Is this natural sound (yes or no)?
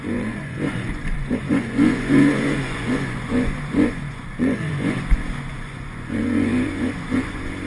no